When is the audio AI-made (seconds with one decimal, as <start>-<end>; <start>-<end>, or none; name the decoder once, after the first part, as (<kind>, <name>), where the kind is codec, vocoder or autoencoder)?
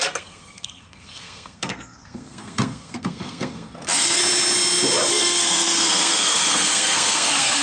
0.0-4.2 (codec, SNAC); 5.1-7.6